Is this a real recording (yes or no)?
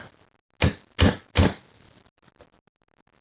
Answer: yes